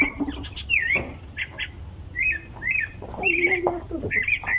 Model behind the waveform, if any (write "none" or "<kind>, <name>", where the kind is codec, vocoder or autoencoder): none